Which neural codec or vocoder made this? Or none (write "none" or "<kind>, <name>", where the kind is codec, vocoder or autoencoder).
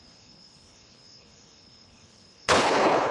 codec, HILCodec